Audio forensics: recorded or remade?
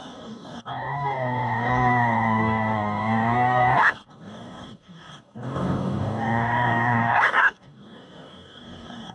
remade